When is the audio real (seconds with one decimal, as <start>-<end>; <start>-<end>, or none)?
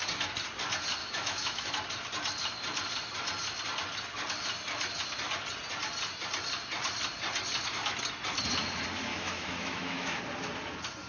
0.0-1.0; 1.7-9.1; 10.2-11.1